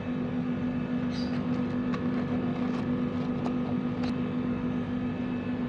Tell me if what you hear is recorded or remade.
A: recorded